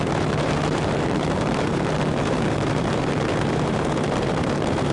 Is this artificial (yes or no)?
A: yes